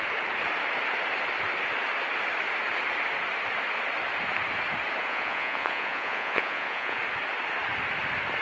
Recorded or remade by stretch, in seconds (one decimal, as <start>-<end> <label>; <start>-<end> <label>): 0.0-5.0 recorded; 5.0-7.0 remade; 7.0-8.4 recorded